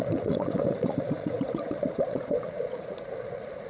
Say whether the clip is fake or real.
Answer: fake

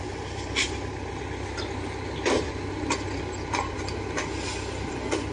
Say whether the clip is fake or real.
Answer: real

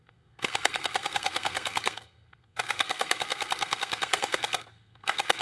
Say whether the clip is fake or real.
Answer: fake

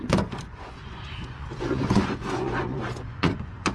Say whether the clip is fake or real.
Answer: fake